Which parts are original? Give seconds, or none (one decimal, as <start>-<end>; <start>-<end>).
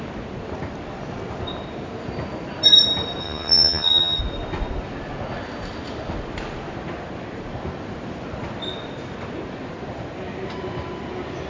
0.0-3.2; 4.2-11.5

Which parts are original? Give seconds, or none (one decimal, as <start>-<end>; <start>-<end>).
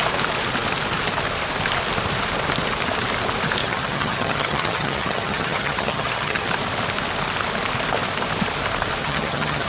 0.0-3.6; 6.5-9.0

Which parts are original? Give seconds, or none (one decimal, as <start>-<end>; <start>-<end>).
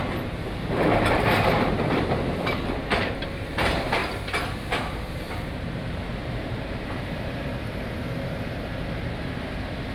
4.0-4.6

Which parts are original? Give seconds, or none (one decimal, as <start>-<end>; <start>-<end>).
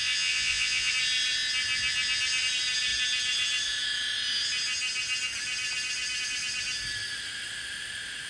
0.9-8.3